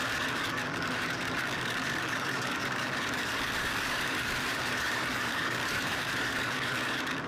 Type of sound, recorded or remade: remade